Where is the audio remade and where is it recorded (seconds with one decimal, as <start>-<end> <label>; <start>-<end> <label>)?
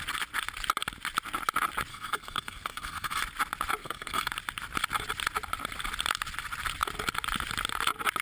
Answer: 0.0-1.9 recorded; 1.9-3.2 remade; 3.2-3.8 recorded; 3.8-4.3 remade; 4.3-8.2 recorded